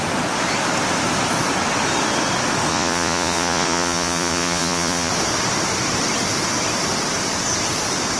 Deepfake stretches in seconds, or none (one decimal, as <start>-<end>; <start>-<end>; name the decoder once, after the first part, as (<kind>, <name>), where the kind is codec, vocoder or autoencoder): 2.7-5.1 (vocoder, Vocos)